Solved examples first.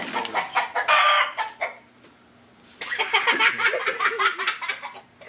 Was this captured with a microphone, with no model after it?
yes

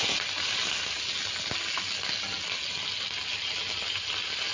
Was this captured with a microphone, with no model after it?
yes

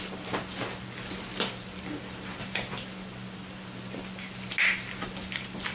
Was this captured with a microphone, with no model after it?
yes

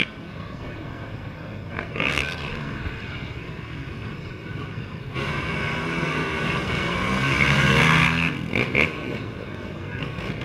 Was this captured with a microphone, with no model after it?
no